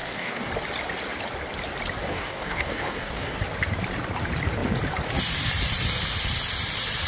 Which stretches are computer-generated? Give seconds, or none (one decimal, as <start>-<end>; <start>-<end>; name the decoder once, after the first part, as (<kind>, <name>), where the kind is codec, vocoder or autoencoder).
0.0-0.5 (codec, DAC); 2.0-3.4